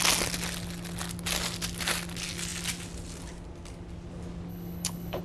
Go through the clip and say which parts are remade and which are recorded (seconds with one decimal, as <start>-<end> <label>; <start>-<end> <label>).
0.0-4.5 recorded; 4.5-5.2 remade